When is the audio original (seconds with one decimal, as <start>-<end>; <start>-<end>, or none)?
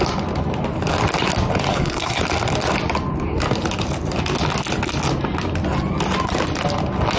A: 0.0-1.7; 2.2-7.2